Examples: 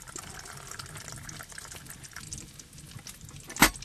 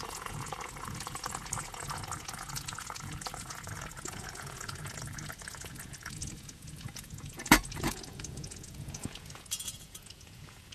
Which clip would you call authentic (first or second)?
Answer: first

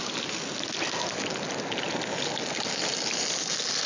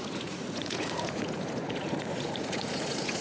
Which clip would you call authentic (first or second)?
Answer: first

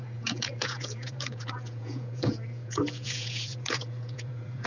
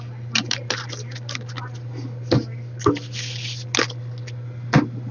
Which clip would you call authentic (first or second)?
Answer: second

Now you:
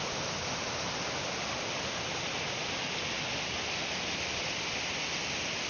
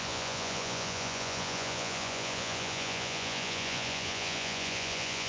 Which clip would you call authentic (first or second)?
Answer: first